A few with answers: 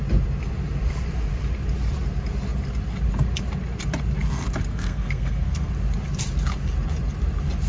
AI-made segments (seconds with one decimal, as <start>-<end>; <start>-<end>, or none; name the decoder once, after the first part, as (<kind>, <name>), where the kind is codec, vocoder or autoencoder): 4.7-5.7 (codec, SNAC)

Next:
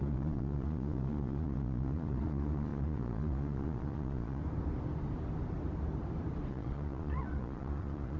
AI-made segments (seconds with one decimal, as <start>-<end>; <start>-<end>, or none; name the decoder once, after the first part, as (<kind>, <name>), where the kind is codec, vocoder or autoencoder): 0.0-4.4 (vocoder, Vocos); 6.5-8.2

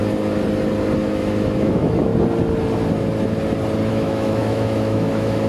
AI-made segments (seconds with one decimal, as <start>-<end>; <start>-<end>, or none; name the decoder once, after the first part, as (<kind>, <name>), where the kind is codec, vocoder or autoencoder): 1.0-2.1 (autoencoder, DAC-VAE); 3.9-5.5

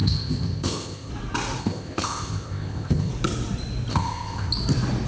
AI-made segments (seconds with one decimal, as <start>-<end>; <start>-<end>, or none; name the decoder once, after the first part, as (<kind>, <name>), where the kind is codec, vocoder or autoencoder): 0.0-1.1 (codec, ZipCodec); 1.6-3.1; 3.9-4.5

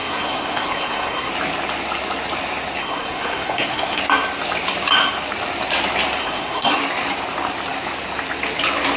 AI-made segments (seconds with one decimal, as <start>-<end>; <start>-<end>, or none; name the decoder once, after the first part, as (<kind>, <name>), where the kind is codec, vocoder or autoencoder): 0.0-1.3 (codec, SNAC); 2.8-4.0; 6.2-6.8

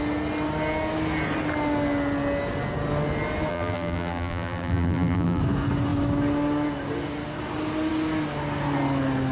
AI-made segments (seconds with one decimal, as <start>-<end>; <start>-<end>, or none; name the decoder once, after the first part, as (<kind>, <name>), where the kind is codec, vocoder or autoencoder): 3.5-5.4 (vocoder, BigVGAN v2)